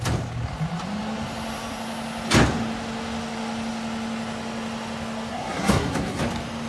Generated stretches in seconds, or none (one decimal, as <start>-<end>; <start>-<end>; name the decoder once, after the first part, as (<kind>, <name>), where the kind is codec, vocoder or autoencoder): 5.3-6.2 (codec, SNAC)